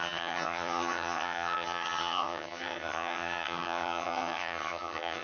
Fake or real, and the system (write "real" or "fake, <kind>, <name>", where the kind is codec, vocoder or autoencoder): fake, vocoder, HiFi-GAN